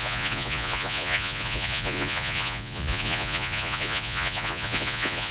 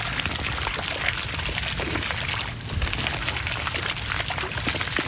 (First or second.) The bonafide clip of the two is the second